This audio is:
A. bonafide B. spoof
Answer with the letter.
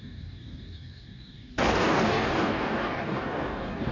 B